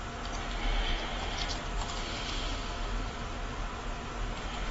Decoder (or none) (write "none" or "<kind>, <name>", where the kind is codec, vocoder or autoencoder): none